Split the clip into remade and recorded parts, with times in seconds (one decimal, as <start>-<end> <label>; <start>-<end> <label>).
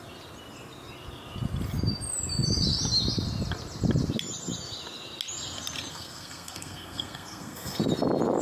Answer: 0.0-5.9 recorded; 5.9-7.8 remade; 7.8-8.4 recorded